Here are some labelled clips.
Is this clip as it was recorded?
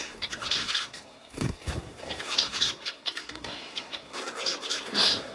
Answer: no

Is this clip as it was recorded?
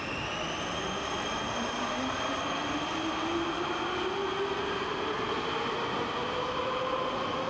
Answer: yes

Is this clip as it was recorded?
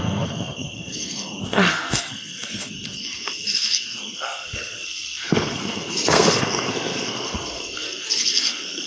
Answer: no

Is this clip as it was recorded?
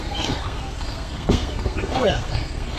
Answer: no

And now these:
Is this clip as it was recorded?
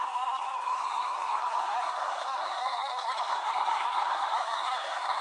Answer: no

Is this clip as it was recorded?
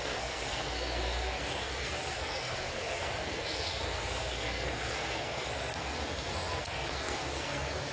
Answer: no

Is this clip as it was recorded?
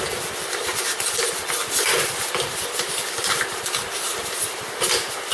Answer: yes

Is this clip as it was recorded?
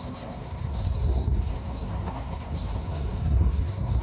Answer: no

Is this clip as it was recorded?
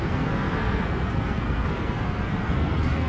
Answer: no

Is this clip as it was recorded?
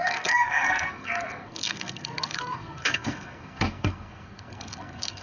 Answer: no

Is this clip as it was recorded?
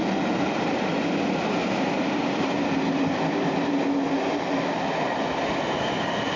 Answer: yes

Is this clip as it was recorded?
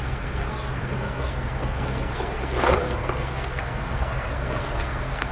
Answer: no